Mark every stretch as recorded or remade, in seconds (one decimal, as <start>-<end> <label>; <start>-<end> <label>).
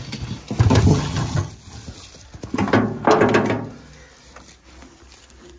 0.0-0.9 recorded; 0.9-1.5 remade; 1.5-5.6 recorded